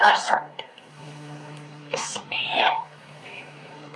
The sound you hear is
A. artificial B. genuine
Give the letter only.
A